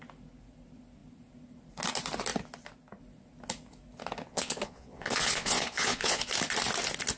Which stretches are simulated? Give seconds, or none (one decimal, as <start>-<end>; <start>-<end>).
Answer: 4.3-6.3